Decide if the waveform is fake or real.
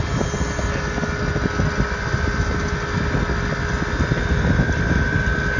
real